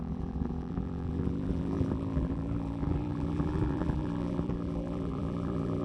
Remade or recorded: remade